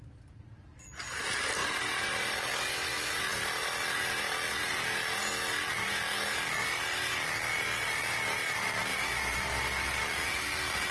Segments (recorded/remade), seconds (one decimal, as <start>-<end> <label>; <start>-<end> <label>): 0.0-1.6 recorded; 1.6-2.5 remade; 2.5-8.9 recorded; 8.9-9.7 remade; 9.7-10.9 recorded